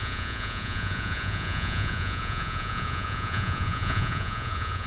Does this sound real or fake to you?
fake